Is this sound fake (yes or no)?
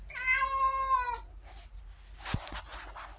no